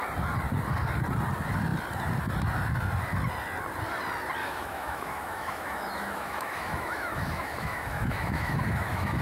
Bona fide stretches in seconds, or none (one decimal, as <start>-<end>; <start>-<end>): 0.0-4.4